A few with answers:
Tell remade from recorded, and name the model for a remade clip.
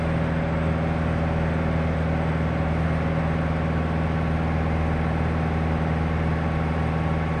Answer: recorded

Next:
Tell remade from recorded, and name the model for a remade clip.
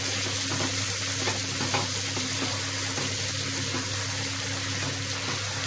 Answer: recorded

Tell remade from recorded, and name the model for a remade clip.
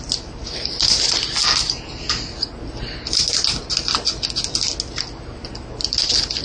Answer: recorded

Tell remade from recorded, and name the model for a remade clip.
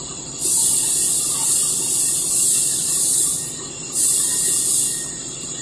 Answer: recorded